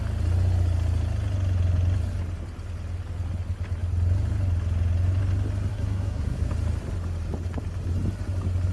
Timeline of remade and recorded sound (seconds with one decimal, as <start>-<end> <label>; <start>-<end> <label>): 0.0-5.7 recorded; 5.7-6.5 remade; 6.5-8.7 recorded